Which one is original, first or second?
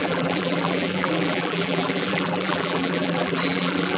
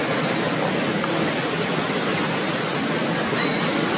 second